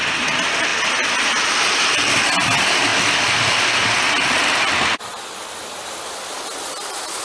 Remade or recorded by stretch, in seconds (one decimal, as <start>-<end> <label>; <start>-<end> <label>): 0.0-7.2 recorded